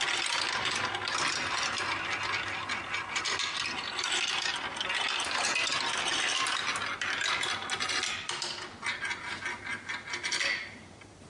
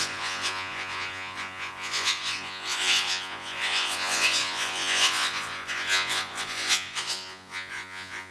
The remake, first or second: second